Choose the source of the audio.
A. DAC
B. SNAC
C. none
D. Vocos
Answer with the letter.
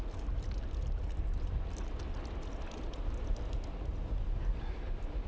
C